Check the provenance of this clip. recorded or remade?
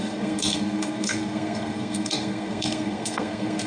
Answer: remade